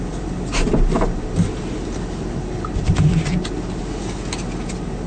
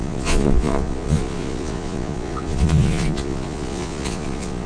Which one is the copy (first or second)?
second